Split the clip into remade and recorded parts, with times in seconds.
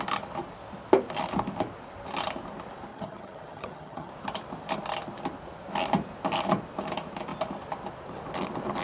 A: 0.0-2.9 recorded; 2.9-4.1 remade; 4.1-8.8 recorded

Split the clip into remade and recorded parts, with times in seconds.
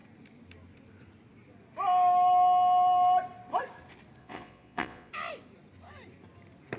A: 0.0-4.2 recorded; 4.2-5.1 remade; 5.1-6.8 recorded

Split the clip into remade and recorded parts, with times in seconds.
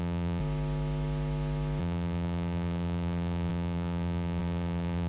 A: 0.0-0.4 remade; 0.4-1.8 recorded; 1.8-5.1 remade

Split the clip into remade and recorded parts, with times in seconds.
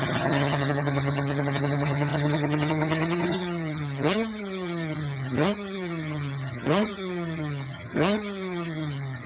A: 0.0-9.3 remade